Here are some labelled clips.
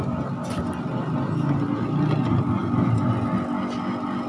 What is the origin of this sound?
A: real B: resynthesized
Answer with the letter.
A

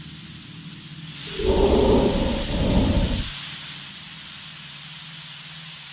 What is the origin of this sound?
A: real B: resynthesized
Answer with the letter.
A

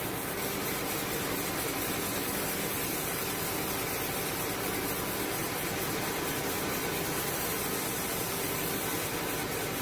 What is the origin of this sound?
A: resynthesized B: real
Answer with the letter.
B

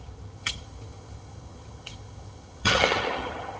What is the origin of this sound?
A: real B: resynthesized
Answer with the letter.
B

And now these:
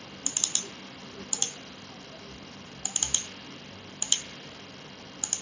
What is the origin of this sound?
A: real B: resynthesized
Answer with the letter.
A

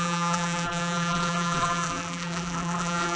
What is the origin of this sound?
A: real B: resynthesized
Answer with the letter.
B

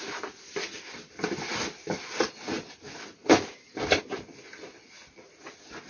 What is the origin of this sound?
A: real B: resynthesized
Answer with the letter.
A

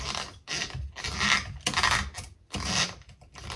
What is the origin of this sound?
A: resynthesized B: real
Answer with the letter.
B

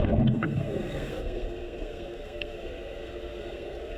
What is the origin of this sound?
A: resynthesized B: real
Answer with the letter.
A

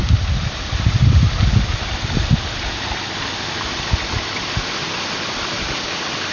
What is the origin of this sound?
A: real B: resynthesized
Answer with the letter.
A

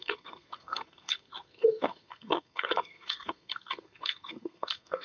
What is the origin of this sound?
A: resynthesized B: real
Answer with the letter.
A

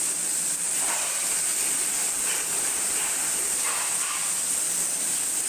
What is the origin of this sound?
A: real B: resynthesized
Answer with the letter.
A